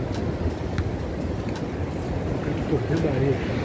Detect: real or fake real